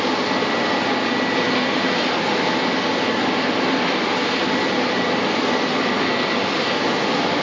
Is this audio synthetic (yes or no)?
no